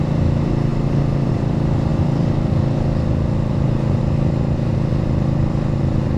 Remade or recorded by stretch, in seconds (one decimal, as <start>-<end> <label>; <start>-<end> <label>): 0.0-0.7 remade; 0.7-1.3 recorded; 1.3-6.2 remade